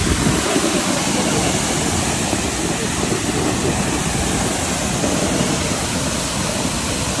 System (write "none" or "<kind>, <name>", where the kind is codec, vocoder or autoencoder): none